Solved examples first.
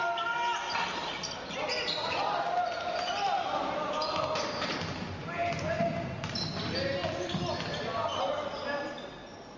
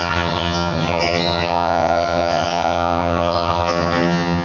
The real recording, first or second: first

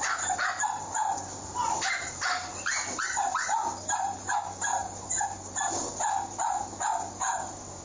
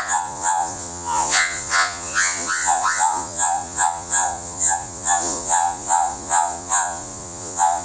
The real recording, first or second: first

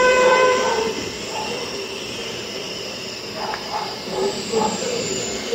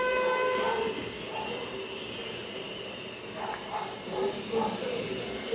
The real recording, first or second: second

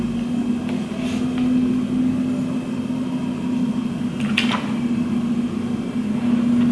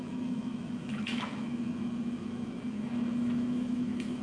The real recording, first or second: first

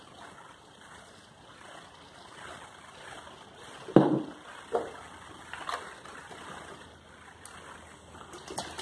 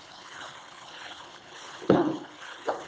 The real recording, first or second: first